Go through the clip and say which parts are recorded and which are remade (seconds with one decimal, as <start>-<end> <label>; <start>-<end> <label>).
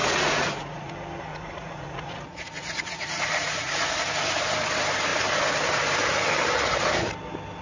0.0-0.9 remade; 0.9-1.3 recorded; 1.3-3.9 remade; 3.9-7.6 recorded